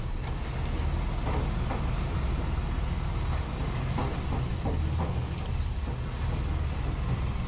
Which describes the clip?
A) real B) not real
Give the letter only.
A